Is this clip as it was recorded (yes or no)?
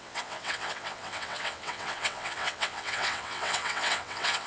no